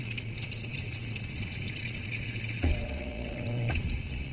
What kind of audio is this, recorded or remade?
remade